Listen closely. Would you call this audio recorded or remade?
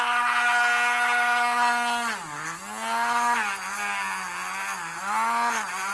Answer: recorded